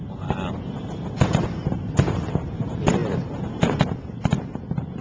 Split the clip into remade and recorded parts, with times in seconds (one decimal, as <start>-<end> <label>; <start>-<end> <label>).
0.0-5.0 recorded